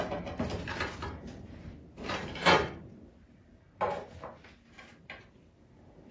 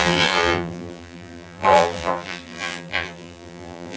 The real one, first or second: first